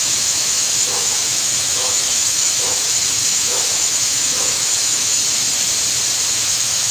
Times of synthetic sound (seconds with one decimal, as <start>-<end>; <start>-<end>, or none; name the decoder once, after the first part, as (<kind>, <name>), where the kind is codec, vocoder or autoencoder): 0.0-5.2 (autoencoder, DAC-VAE); 6.3-6.9

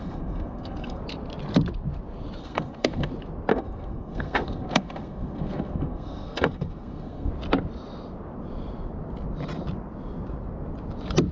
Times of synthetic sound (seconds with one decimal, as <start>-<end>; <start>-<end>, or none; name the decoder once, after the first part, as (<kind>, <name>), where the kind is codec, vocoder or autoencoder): 0.0-1.0 (codec, SNAC); 2.4-3.1; 3.5-7.3

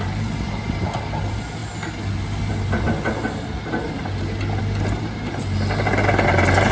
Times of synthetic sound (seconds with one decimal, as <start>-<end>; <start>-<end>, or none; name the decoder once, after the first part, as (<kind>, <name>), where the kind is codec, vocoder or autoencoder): none

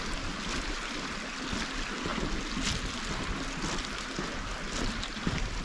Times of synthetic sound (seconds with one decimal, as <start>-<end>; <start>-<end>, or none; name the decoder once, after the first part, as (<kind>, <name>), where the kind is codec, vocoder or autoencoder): none

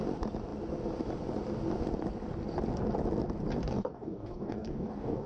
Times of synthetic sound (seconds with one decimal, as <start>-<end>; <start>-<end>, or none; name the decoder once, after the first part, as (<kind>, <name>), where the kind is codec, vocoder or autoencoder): 3.6-5.3 (codec, DAC)

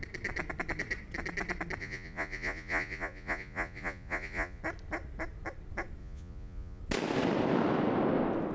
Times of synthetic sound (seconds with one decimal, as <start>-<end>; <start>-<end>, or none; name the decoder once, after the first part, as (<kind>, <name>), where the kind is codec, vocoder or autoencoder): 1.8-4.6 (vocoder, Vocos); 6.0-6.8

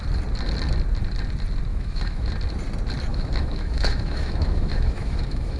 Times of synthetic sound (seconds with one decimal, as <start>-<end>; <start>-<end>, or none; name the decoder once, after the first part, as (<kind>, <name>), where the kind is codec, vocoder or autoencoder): 1.7-2.3 (autoencoder, DAC-VAE); 3.1-5.6